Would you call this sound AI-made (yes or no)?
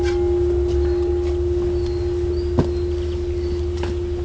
no